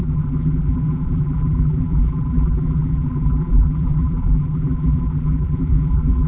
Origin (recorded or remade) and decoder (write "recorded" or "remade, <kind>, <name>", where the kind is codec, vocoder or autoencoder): remade, vocoder, BigVGAN v2